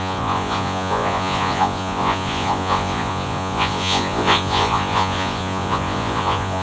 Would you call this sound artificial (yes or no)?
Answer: yes